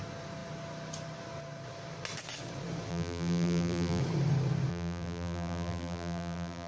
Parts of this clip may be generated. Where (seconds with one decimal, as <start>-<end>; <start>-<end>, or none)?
2.9-4.0; 4.7-6.7